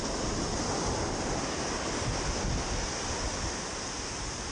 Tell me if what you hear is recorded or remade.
recorded